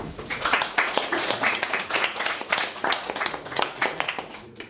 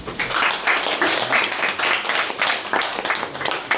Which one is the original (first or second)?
second